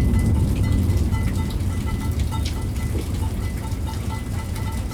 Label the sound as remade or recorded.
recorded